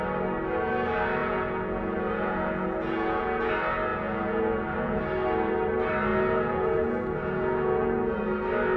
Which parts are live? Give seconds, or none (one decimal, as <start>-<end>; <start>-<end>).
0.0-1.2; 3.5-3.9; 5.0-6.1; 8.2-8.8